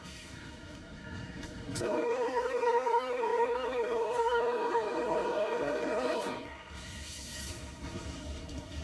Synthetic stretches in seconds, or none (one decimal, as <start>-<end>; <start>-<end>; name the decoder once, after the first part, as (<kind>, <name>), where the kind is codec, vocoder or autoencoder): 0.0-8.8 (codec, SNAC)